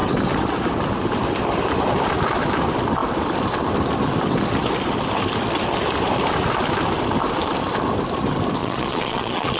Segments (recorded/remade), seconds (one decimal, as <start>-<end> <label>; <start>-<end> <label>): 0.0-8.6 recorded; 8.6-9.6 remade